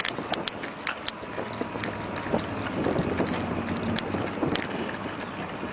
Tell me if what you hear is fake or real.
real